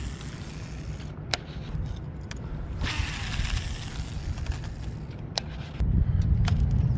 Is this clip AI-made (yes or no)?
no